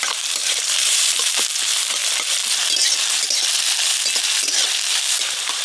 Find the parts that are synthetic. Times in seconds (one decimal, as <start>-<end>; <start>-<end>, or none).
0.0-2.0; 5.1-5.6